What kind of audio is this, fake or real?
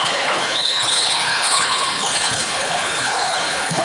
fake